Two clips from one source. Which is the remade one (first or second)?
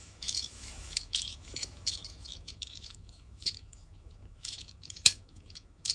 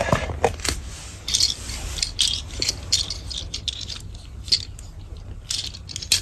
first